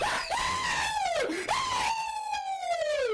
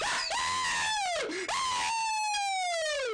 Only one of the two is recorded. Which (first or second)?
second